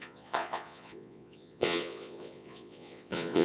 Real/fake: fake